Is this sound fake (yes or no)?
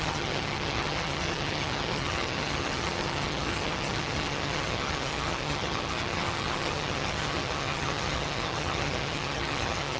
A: yes